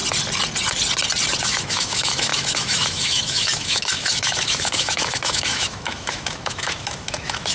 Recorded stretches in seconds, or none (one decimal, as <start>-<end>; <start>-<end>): 0.0-1.4